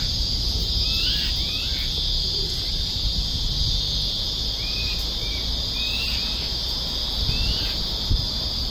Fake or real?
real